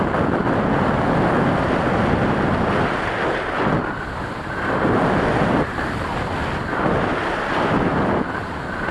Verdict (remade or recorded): recorded